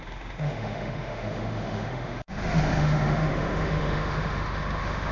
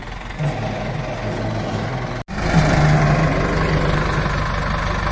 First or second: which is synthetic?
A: first